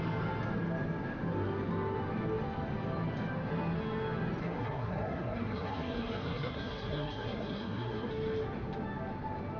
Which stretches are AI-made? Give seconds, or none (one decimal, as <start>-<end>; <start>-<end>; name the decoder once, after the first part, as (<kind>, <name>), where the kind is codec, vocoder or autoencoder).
4.4-8.1 (codec, SNAC)